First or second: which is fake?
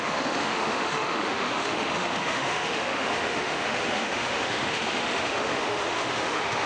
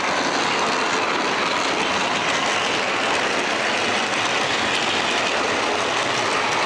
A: first